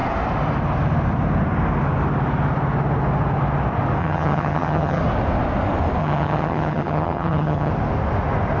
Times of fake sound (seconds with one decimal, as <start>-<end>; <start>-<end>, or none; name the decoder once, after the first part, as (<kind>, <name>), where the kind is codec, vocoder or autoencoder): 4.0-5.0 (vocoder, HiFi-GAN); 6.0-7.7